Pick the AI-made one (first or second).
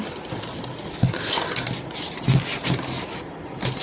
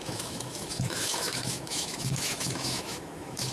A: second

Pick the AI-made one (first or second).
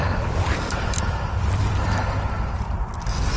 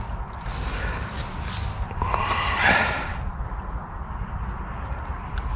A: first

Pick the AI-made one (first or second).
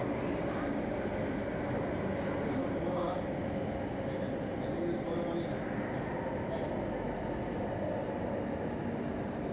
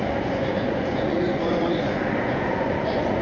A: second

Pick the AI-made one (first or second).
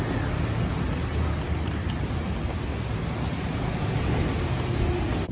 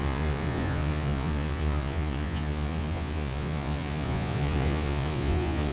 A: second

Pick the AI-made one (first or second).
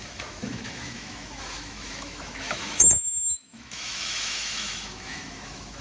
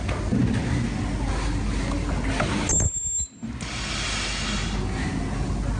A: first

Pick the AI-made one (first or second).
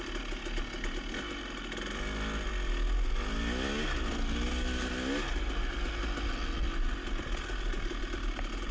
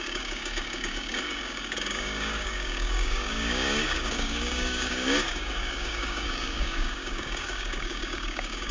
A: second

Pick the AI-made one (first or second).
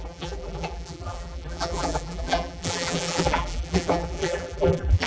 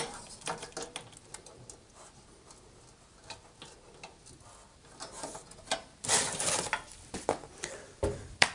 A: first